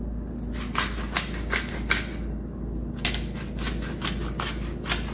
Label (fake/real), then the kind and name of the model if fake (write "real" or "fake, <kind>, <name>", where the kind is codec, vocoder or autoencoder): real